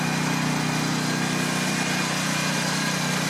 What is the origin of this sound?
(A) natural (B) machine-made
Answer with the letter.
A